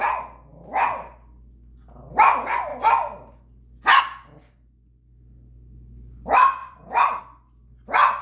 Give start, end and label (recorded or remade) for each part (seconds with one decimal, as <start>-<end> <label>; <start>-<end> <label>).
0.0-6.6 recorded; 6.6-7.2 remade; 7.2-8.2 recorded